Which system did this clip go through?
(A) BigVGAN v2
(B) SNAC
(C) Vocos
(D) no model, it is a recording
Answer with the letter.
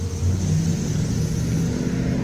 D